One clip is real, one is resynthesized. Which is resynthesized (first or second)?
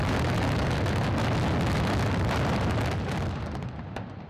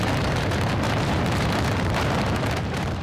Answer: second